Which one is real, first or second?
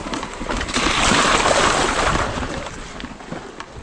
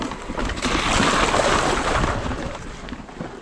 second